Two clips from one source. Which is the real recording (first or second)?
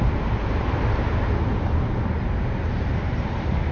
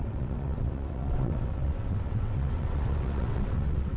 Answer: first